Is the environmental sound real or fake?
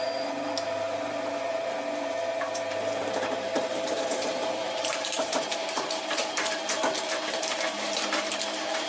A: fake